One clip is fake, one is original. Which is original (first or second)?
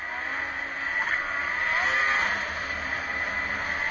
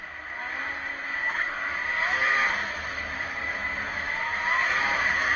first